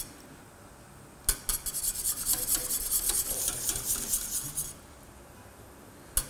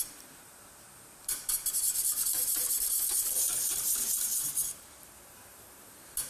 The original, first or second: first